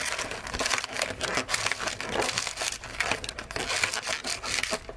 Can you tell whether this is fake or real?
real